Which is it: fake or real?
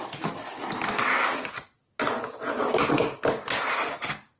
real